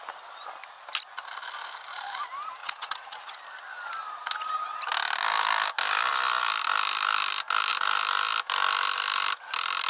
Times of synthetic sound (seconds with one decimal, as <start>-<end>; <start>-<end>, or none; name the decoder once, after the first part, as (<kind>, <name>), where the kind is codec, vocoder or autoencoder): 2.6-3.4 (vocoder, WaveNeXt)